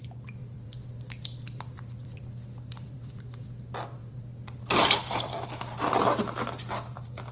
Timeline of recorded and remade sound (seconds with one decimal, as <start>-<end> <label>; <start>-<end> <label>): 0.0-0.4 recorded; 0.4-3.6 remade; 3.6-4.0 recorded; 4.0-5.5 remade; 5.5-7.3 recorded